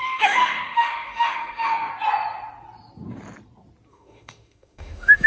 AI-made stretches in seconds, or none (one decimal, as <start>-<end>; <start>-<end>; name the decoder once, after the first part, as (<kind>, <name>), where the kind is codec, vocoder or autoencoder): 0.0-1.9 (autoencoder, DAC-VAE); 3.9-5.3